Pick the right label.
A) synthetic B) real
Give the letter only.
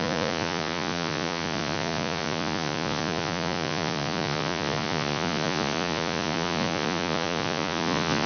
A